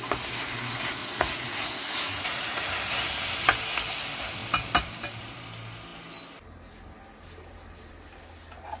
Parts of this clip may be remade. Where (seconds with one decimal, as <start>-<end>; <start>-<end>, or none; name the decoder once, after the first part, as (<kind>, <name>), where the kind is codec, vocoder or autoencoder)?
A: 1.0-2.7 (vocoder, Vocos)